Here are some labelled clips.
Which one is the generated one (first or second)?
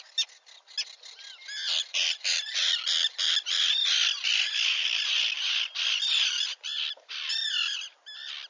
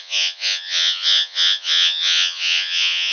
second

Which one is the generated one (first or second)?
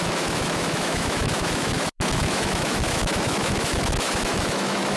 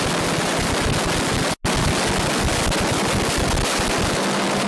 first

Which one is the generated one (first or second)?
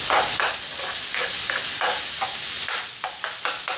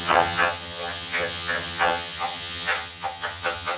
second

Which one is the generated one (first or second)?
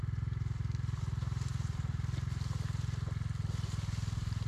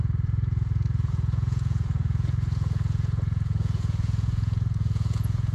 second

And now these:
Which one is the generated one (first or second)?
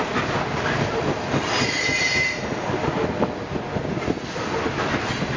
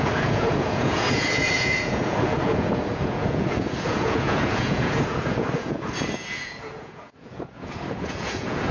second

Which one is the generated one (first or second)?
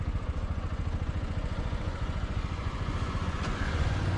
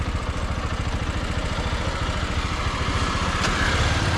first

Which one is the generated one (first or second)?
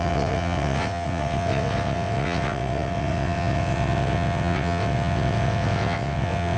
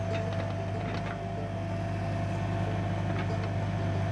first